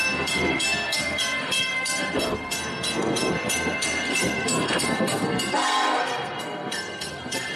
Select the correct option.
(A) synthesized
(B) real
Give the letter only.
A